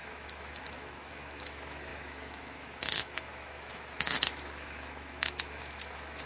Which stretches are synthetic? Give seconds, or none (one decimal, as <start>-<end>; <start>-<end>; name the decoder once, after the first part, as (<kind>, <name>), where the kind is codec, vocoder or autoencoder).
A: 0.0-6.3 (autoencoder, DAC-VAE)